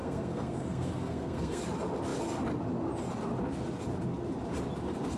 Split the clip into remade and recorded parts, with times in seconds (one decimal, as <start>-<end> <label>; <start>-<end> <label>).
0.0-1.6 remade; 1.6-5.2 recorded